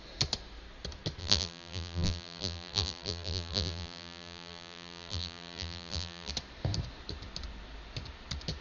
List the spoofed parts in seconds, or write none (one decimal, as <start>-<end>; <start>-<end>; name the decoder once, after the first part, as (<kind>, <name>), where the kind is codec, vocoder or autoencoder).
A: 1.2-6.3 (vocoder, BigVGAN v2)